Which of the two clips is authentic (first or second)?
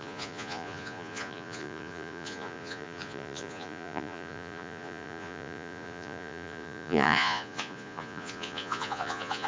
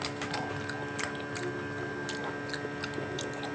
second